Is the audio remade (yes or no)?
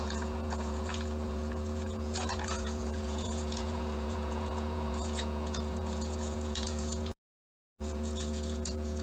yes